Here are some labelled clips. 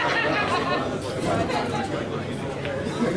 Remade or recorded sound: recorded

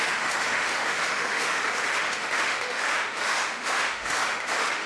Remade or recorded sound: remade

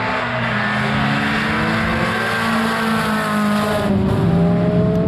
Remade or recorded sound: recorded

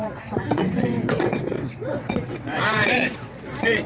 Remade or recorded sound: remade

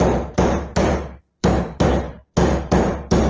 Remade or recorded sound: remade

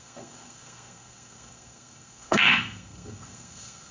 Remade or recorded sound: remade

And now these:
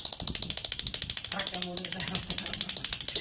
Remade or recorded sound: recorded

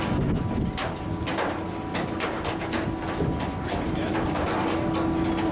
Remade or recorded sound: recorded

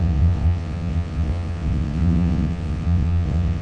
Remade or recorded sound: remade